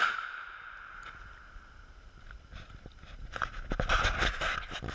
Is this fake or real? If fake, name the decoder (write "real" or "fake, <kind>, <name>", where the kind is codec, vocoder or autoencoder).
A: real